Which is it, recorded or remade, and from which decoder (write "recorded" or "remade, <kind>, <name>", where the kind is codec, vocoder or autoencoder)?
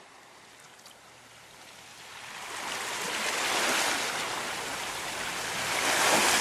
recorded